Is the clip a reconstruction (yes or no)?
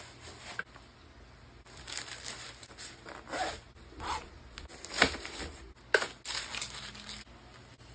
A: no